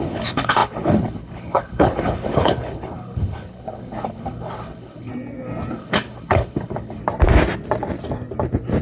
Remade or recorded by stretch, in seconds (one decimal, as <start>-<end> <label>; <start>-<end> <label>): 0.0-5.1 remade; 5.1-5.7 recorded; 5.7-7.0 remade; 7.0-8.8 recorded